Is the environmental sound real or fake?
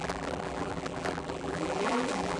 fake